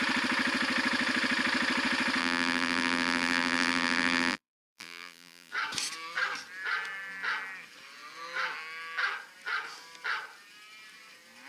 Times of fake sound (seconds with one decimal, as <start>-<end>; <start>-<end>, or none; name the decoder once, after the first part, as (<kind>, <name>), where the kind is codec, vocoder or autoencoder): 2.2-5.5 (vocoder, BigVGAN v2)